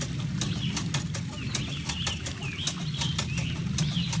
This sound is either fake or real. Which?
real